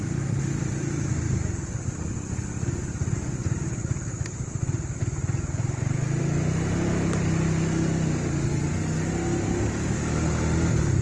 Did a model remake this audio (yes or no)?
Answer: no